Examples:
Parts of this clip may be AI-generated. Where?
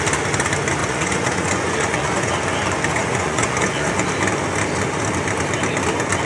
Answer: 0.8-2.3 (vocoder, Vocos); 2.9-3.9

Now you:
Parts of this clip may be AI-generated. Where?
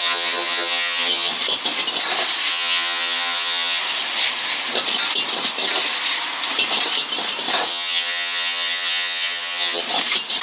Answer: 0.0-1.3 (vocoder, HiFi-GAN); 2.5-3.8; 7.7-9.8